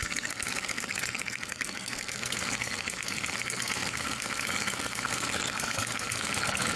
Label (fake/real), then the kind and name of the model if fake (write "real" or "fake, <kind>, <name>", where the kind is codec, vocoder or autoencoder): fake, codec, SNAC